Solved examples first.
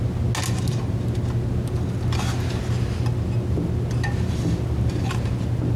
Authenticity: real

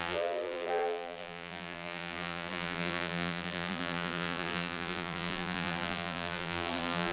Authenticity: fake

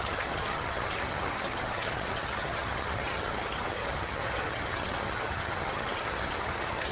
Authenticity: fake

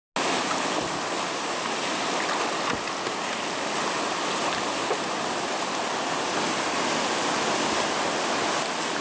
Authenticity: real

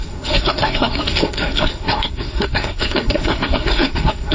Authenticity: fake